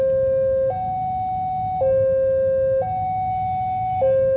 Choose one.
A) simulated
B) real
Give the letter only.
B